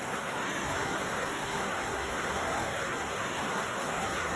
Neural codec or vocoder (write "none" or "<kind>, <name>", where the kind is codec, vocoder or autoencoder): codec, SNAC